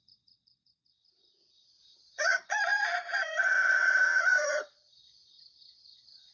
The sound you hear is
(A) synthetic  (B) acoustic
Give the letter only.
A